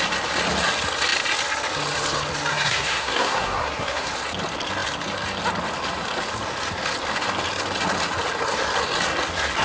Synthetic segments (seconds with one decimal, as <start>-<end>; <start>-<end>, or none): 2.5-4.1